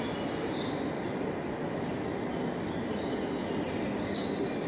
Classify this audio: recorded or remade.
recorded